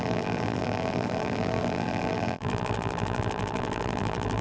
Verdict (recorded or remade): remade